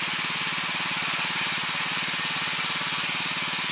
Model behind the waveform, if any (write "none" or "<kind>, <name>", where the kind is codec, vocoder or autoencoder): none